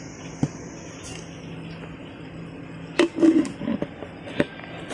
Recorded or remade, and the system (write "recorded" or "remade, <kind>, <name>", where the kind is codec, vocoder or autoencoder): recorded